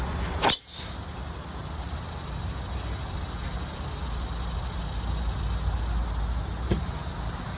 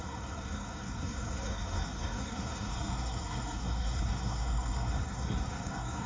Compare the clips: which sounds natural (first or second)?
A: first